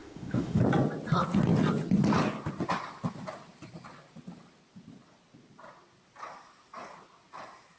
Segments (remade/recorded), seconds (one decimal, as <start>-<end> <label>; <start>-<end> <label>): 0.0-0.6 remade; 0.6-7.8 recorded